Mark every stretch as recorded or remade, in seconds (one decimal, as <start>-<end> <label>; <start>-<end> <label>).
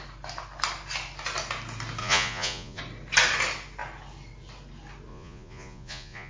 0.0-2.0 recorded; 2.0-2.8 remade; 2.8-5.1 recorded; 5.1-6.3 remade